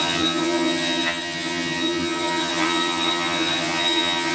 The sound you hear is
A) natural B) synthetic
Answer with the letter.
B